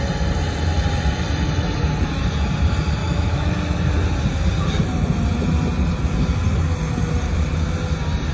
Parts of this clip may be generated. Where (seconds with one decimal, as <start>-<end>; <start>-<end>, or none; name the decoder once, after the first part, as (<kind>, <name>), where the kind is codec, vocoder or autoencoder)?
3.0-3.5 (autoencoder, DAC-VAE)